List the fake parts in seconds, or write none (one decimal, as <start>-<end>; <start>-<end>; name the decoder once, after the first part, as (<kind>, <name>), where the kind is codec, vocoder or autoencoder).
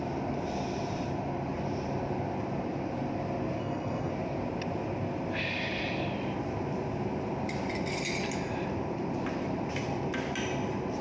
3.6-4.1 (codec, SNAC)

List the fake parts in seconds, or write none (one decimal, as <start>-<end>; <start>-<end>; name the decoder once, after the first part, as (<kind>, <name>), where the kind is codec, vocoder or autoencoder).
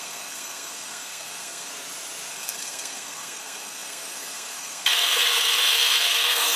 0.0-1.7 (codec, SNAC); 2.3-6.6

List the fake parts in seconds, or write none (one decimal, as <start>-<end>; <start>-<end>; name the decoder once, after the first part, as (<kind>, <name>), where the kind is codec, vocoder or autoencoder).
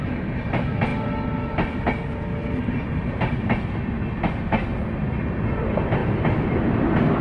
none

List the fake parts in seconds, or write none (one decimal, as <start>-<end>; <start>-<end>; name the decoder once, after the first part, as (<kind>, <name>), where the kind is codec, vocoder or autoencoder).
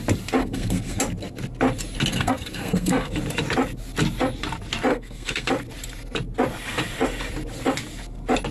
0.4-1.0 (codec, SNAC); 2.1-3.1; 4.9-5.5